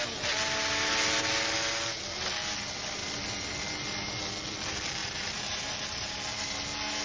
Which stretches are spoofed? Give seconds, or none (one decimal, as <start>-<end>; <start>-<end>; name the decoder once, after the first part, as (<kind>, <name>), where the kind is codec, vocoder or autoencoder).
5.0-6.2 (vocoder, BigVGAN v2)